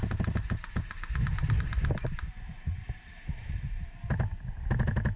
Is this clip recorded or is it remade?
remade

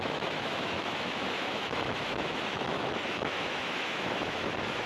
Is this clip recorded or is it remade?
remade